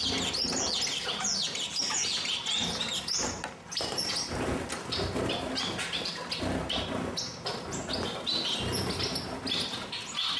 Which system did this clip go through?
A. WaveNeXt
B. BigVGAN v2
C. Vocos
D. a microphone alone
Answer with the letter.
D